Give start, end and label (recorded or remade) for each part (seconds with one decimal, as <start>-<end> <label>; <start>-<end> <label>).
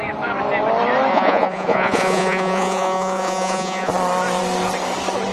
0.0-1.1 recorded; 1.1-3.9 remade; 3.9-5.3 recorded